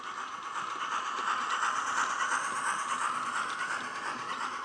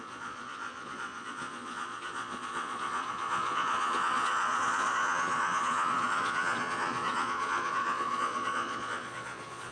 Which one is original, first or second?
first